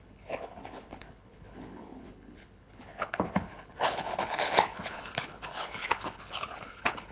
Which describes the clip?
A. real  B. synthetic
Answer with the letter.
B